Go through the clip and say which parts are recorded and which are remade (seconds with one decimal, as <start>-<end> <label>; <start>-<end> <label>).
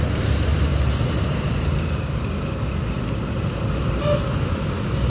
0.0-5.1 recorded